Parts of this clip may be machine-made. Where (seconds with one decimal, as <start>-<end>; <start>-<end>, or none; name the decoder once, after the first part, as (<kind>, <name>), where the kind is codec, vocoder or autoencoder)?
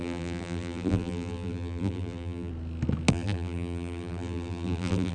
0.0-2.5 (vocoder, BigVGAN v2); 3.1-5.1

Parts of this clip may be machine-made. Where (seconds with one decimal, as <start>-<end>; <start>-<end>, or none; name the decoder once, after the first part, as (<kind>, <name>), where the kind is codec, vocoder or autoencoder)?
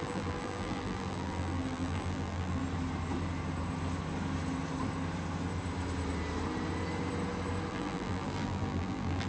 0.0-2.6 (vocoder, BigVGAN v2); 7.7-9.3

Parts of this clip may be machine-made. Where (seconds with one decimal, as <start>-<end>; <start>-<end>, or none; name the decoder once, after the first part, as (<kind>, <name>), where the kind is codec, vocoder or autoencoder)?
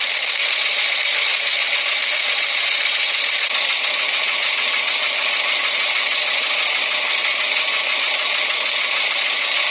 1.3-2.3 (vocoder, BigVGAN v2)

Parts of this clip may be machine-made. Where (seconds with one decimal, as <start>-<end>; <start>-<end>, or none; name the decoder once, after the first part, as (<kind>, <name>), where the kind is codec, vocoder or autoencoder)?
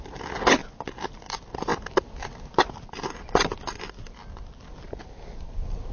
0.0-0.6 (vocoder, BigVGAN v2); 1.1-1.7; 3.5-4.2; 5.0-5.9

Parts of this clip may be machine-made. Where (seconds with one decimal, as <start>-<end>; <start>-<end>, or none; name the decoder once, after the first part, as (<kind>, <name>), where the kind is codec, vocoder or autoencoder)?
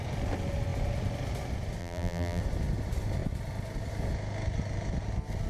1.8-2.4 (vocoder, BigVGAN v2)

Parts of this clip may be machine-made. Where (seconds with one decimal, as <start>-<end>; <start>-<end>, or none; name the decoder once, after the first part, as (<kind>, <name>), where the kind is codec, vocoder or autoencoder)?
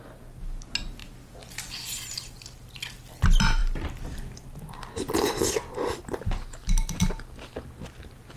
none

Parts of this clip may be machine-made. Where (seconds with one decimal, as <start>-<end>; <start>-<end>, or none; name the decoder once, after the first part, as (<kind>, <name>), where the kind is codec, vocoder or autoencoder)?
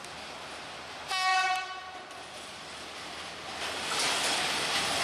none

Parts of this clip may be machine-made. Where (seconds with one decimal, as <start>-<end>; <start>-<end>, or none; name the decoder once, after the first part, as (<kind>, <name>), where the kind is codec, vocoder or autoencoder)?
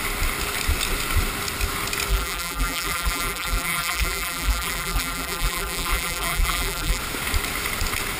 2.1-7.0 (vocoder, BigVGAN v2)